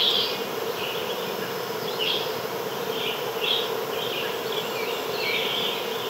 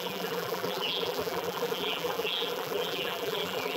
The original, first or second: first